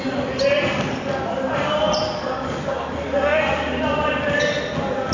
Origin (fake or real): real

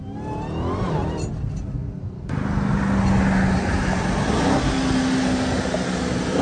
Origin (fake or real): real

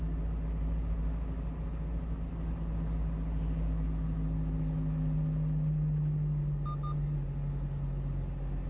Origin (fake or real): real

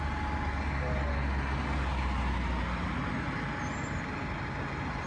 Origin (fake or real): real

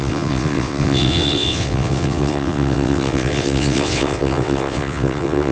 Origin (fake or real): fake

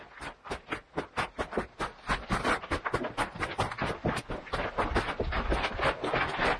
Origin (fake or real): real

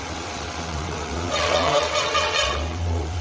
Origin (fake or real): fake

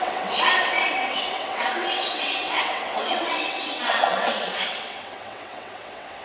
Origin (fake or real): fake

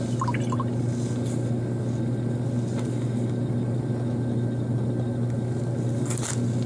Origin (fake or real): real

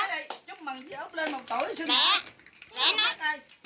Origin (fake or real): real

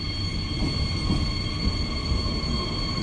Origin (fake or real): real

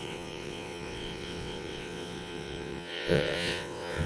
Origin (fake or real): fake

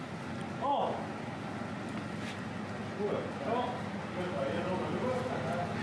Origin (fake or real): real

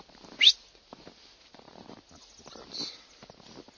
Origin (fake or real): real